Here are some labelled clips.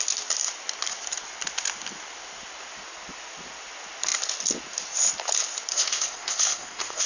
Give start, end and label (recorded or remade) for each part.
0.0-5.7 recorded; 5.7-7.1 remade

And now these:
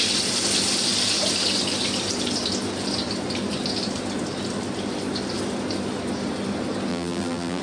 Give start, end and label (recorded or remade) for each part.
0.0-6.9 recorded; 6.9-7.6 remade

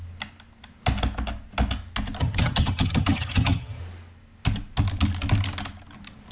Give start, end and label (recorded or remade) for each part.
0.0-2.2 recorded; 2.2-3.8 remade; 3.8-6.3 recorded

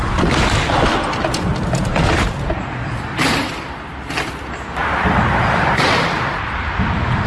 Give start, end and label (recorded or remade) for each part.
0.0-1.5 recorded; 1.5-3.5 remade; 3.5-4.8 recorded; 4.8-7.3 remade